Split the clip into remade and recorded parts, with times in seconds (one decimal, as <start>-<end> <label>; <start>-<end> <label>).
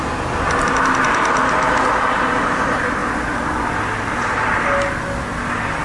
0.0-5.8 recorded